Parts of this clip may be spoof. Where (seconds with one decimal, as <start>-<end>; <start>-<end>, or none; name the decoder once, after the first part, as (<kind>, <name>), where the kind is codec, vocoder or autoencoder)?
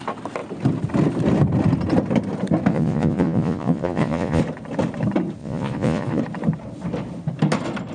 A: 2.7-4.4 (vocoder, Vocos); 5.4-6.2